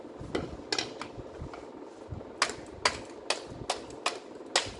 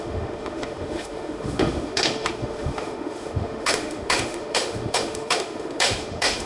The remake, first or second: second